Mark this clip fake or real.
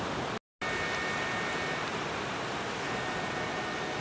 real